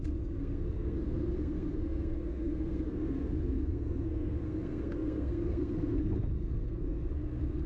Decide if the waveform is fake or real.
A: fake